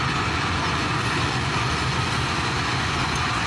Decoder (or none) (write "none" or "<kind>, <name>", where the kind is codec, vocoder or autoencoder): vocoder, Vocos